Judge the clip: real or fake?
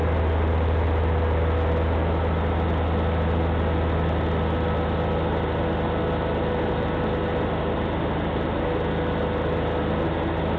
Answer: real